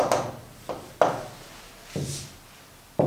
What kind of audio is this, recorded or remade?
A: recorded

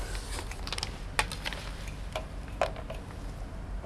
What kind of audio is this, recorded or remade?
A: recorded